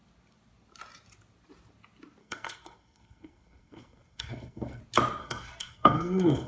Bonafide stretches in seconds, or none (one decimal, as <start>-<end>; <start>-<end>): 0.0-2.2; 4.8-5.2